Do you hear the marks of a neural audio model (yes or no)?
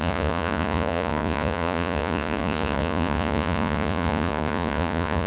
yes